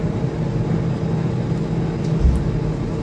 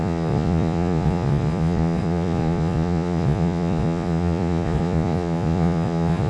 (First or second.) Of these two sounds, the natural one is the first